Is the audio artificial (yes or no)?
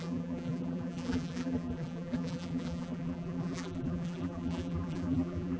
yes